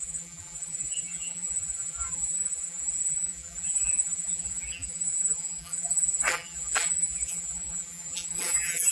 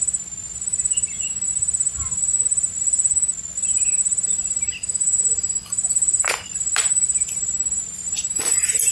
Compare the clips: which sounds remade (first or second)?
first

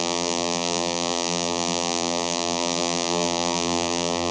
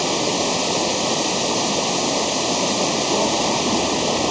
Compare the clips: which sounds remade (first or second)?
first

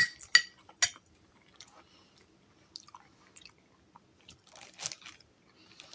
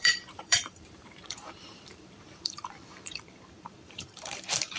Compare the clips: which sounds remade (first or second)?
second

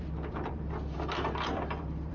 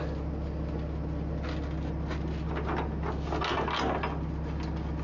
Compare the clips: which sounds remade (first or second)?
first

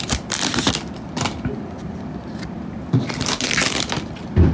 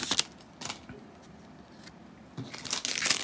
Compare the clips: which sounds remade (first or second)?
first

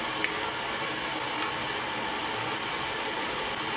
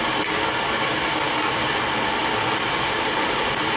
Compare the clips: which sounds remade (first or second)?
second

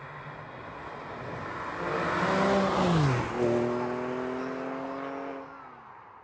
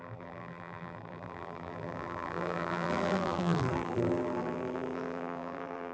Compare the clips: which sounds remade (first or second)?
second